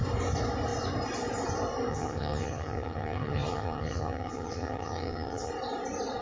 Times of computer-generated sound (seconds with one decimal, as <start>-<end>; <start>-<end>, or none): 1.9-5.5